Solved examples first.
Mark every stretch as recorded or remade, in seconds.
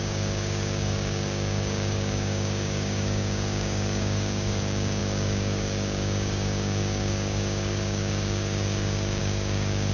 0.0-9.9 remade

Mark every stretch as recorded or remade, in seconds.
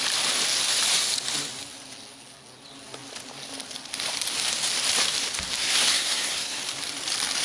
0.0-5.6 recorded; 5.6-6.6 remade; 6.6-7.4 recorded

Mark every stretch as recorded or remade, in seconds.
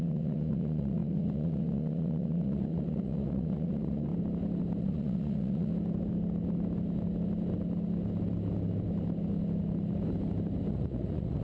0.0-4.1 remade; 4.1-4.8 recorded; 4.8-5.7 remade; 5.7-10.7 recorded; 10.7-11.4 remade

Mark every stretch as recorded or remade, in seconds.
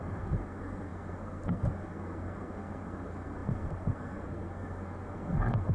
0.0-5.7 remade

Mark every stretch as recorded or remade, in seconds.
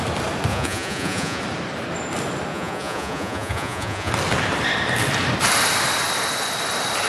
0.0-0.5 recorded; 0.5-1.4 remade; 1.4-2.5 recorded; 2.5-4.1 remade; 4.1-7.1 recorded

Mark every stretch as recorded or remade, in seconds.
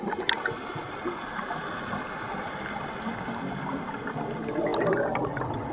0.0-5.7 recorded